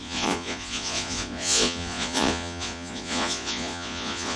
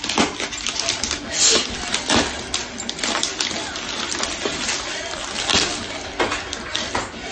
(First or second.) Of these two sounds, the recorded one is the second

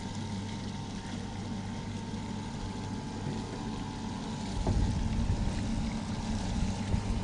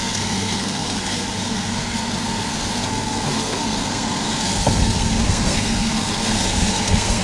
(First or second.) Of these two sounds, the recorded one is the first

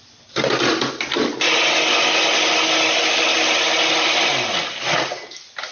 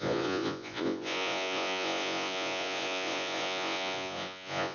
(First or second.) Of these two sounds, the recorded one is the first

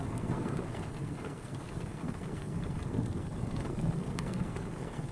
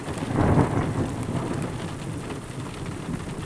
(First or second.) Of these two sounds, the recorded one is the second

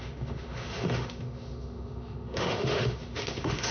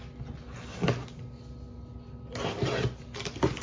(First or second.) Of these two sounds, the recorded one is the second